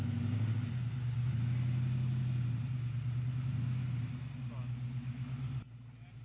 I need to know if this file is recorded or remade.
recorded